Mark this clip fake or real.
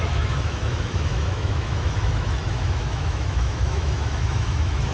fake